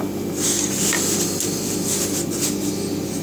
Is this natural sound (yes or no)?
yes